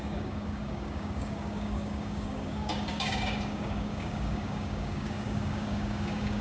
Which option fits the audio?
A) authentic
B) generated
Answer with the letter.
B